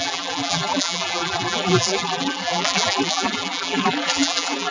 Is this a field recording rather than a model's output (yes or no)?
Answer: no